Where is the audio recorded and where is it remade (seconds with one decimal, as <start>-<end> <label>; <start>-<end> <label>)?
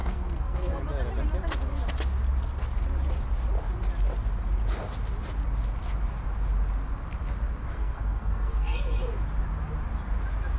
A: 0.0-0.8 remade; 0.8-7.6 recorded; 7.6-9.0 remade; 9.0-10.6 recorded